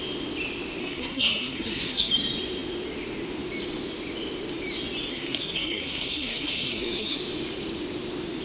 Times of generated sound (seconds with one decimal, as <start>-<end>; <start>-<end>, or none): 0.8-2.1; 5.1-7.2